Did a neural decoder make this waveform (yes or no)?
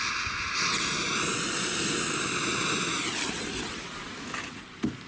no